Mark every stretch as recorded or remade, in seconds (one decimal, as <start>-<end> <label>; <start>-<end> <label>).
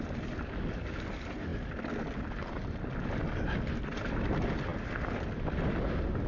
0.0-6.3 recorded